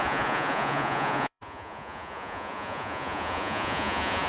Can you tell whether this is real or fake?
fake